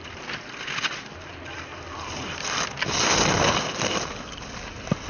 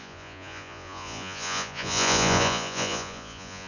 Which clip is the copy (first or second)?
second